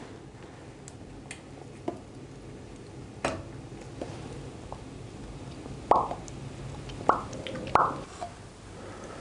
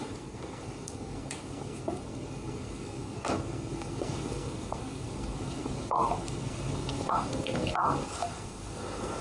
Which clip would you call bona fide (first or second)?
first